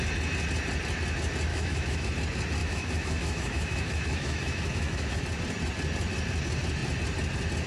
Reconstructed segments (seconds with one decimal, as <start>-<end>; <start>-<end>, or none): 1.5-2.1; 2.6-5.2